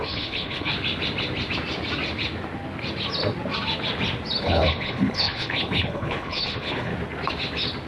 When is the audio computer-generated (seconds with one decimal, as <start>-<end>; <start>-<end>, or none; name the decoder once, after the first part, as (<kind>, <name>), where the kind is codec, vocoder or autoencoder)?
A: 0.0-0.7 (codec, HILCodec); 4.4-6.9